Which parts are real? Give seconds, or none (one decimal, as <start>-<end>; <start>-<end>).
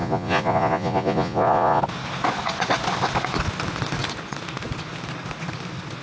1.8-6.0